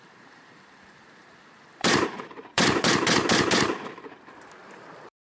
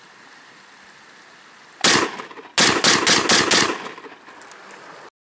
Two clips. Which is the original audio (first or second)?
second